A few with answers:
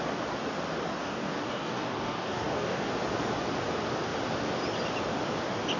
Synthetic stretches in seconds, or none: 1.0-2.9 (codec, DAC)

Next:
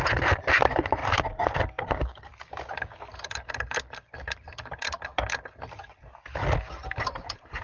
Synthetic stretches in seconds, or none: none

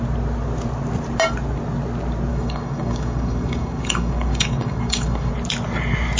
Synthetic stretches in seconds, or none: 2.3-5.3 (codec, DAC)

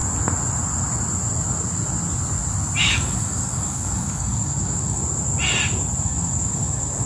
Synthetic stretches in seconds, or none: 2.8-5.0 (codec, DAC); 6.0-7.1

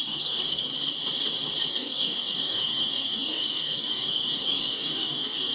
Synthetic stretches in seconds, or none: 0.0-0.7 (codec, DAC); 1.7-5.5